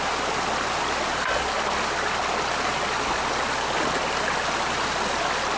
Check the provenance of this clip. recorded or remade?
recorded